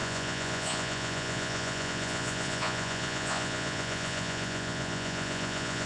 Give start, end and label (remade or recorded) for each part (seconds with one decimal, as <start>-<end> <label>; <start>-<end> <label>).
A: 0.0-5.9 remade